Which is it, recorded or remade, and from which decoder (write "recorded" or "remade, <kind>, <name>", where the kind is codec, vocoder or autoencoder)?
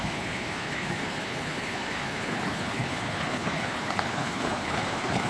remade, codec, HILCodec